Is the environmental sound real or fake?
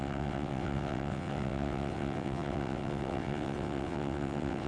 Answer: fake